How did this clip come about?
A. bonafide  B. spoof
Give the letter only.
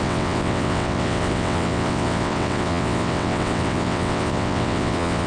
B